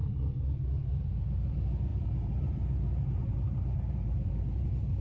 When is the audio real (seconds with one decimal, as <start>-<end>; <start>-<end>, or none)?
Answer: 0.0-0.9